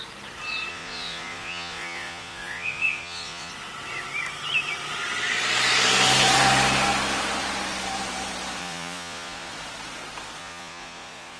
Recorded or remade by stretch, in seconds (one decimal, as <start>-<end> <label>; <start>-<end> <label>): 0.0-0.7 recorded; 0.7-3.5 remade; 3.5-8.6 recorded; 8.6-9.5 remade; 9.5-10.4 recorded; 10.4-11.4 remade